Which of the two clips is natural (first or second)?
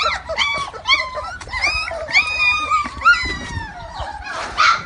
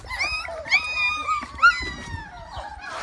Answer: second